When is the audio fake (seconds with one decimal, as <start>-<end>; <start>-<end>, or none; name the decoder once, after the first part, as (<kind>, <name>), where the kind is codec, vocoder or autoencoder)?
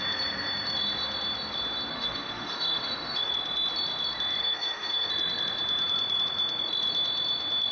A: 1.9-3.3 (autoencoder, DAC-VAE); 4.4-5.1